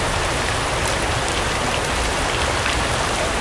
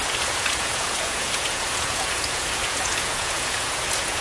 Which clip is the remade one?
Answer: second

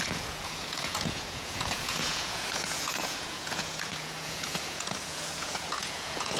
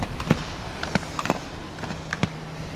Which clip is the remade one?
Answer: first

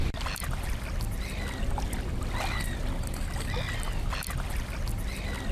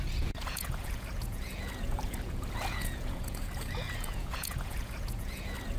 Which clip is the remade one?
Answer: second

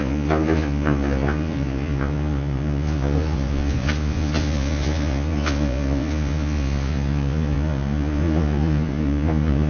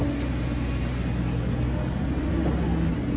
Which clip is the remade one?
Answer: first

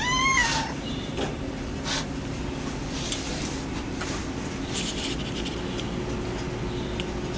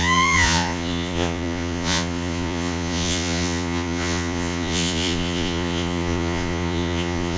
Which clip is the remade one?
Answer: second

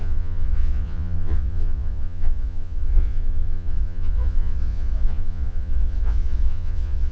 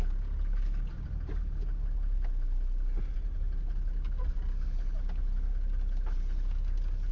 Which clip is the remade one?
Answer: first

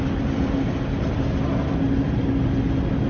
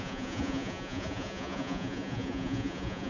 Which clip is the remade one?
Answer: second